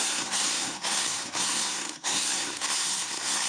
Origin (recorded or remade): remade